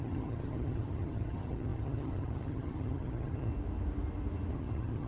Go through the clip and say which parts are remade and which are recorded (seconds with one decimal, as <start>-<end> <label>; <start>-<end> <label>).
0.0-3.5 remade; 3.5-4.5 recorded; 4.5-5.1 remade